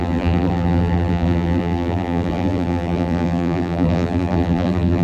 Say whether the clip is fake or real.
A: fake